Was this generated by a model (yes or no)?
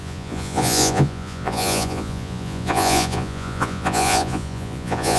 yes